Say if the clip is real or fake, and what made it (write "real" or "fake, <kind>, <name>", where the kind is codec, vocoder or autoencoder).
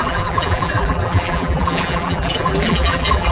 fake, vocoder, BigVGAN v2